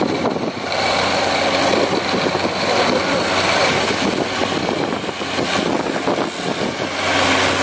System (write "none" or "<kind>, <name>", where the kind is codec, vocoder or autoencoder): none